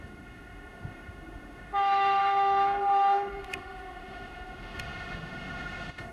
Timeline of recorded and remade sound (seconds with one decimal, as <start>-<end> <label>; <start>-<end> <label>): 0.0-6.1 remade